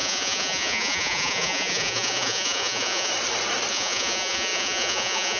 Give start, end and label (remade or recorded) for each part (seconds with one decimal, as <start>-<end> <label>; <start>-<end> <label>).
0.0-3.1 remade; 3.1-3.7 recorded; 3.7-5.4 remade